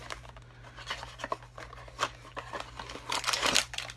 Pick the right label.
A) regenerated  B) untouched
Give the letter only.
B